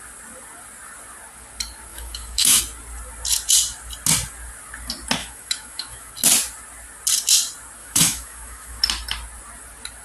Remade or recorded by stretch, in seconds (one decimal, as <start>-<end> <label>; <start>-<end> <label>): 0.0-1.9 recorded; 1.9-2.6 remade; 2.6-5.2 recorded; 5.2-6.1 remade; 6.1-7.8 recorded; 7.8-8.8 remade; 8.8-10.0 recorded

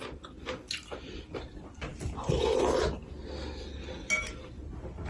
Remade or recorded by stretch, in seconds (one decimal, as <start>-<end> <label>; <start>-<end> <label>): 0.0-5.1 recorded

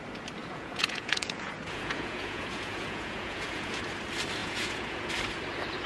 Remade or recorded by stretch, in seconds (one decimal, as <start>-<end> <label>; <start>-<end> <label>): 0.0-0.4 recorded; 0.4-3.8 remade; 3.8-4.4 recorded; 4.4-5.1 remade; 5.1-5.9 recorded